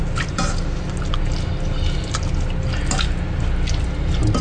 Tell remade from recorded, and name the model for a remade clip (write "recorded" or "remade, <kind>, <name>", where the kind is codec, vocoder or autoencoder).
recorded